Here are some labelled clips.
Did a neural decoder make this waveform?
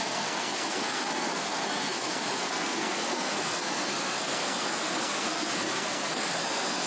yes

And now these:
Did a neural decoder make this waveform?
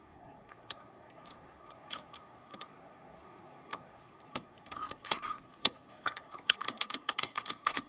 yes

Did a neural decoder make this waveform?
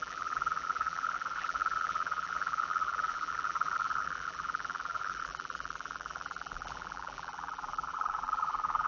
yes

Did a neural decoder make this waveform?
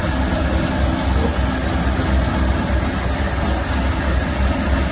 no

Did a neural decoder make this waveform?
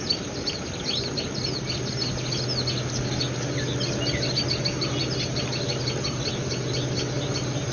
no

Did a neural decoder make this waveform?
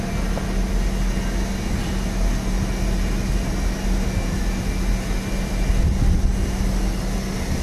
no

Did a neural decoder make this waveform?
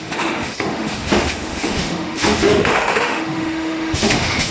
yes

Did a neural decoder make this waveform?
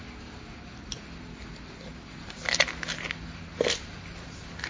no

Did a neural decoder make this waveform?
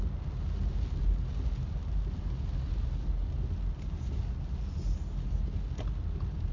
no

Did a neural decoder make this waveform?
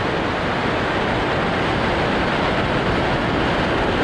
no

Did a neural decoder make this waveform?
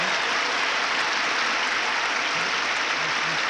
no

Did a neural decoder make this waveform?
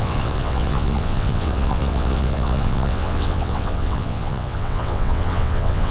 yes